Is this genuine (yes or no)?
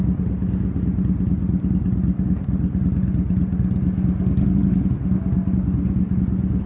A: yes